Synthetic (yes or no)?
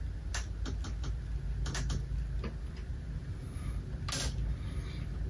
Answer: no